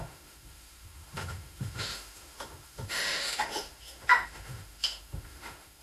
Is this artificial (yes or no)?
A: yes